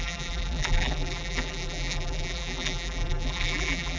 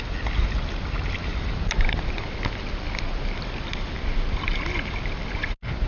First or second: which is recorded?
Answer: second